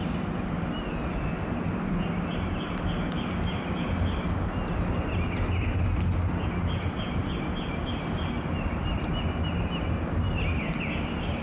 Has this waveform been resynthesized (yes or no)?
no